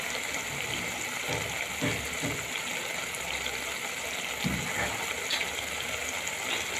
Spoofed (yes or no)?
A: no